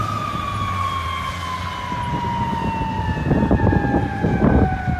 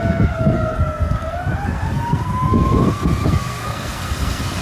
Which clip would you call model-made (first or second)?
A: second